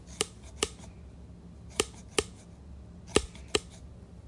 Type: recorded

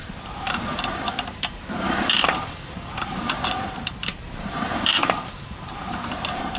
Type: remade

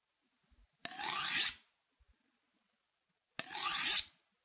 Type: recorded